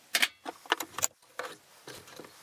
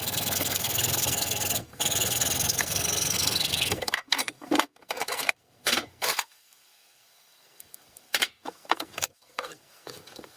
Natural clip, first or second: first